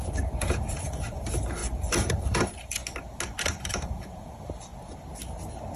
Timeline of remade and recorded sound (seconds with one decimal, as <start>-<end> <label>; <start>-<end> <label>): 0.0-2.8 remade; 2.8-3.4 recorded; 3.4-4.7 remade; 4.7-5.8 recorded